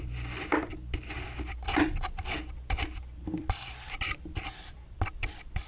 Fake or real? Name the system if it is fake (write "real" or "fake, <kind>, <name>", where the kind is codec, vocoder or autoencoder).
fake, vocoder, BigVGAN v2